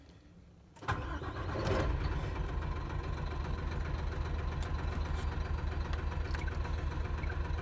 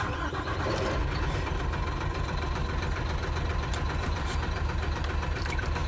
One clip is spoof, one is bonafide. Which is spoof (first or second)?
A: second